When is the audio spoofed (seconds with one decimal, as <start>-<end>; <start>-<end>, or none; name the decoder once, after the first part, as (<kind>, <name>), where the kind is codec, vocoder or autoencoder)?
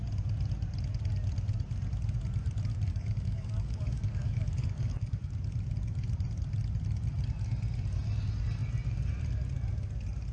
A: 2.9-5.3 (codec, DAC)